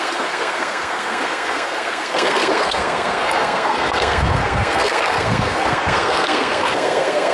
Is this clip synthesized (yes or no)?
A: yes